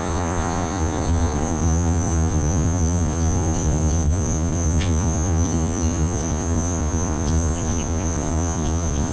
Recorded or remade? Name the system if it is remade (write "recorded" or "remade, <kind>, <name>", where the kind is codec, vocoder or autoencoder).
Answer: remade, vocoder, Vocos